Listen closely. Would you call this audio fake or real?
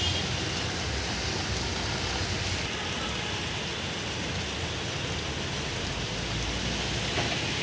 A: real